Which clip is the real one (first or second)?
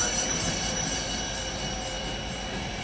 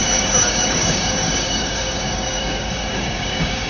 first